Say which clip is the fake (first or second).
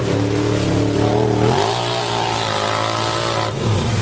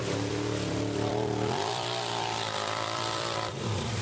second